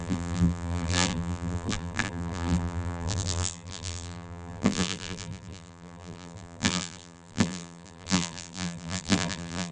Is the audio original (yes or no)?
no